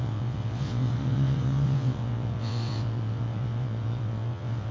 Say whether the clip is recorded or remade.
remade